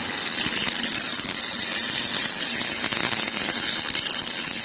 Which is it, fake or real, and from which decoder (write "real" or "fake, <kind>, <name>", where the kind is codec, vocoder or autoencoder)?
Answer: real